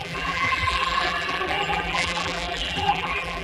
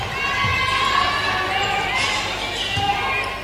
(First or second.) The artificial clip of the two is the first